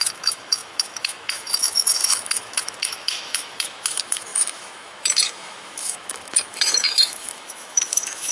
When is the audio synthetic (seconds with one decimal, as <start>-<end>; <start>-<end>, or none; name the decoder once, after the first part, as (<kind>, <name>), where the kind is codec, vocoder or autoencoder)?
0.0-8.3 (autoencoder, DAC-VAE)